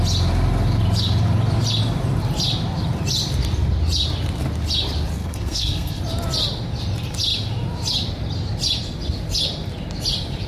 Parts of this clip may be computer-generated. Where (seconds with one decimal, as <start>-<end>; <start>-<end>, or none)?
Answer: 5.2-6.0

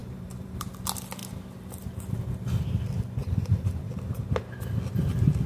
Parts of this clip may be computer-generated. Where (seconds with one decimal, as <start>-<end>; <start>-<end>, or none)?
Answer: 0.0-0.7; 3.2-3.8

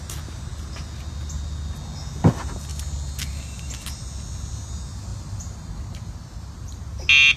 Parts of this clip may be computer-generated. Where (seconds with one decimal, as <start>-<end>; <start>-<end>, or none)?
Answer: none